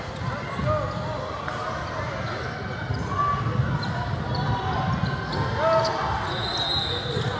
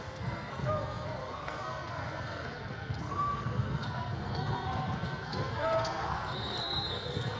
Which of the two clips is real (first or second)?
first